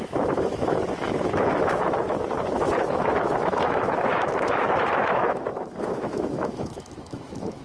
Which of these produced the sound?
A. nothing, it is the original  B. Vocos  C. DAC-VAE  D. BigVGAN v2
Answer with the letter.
C